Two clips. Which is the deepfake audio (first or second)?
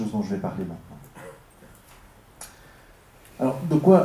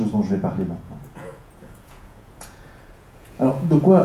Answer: second